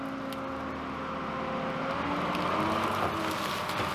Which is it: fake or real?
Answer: real